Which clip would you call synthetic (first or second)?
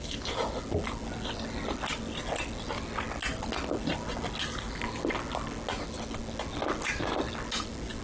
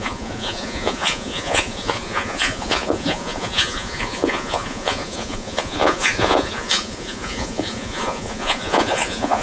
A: second